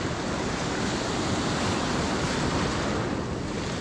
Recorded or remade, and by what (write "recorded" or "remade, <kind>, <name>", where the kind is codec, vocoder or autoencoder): recorded